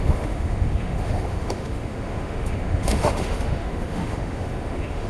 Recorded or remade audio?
remade